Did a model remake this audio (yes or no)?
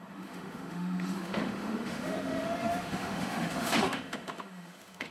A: yes